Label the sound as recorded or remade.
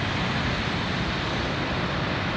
recorded